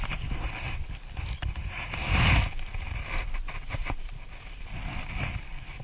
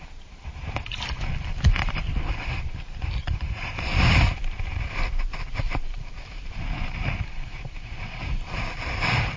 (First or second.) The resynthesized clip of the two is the second